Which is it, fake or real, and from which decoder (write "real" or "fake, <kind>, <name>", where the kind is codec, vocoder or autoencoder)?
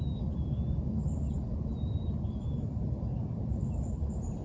real